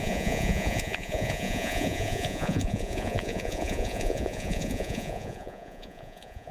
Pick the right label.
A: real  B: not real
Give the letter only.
B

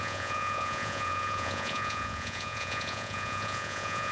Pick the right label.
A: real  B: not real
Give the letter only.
B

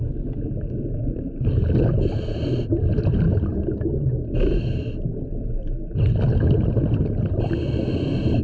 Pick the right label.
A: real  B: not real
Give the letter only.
A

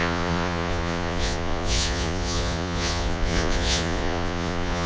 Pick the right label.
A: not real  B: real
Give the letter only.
A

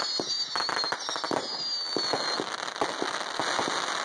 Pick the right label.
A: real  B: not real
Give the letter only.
A